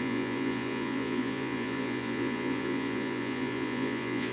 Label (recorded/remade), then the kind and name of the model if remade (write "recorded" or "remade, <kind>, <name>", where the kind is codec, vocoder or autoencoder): remade, vocoder, Vocos